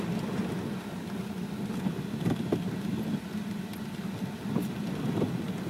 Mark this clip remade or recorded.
recorded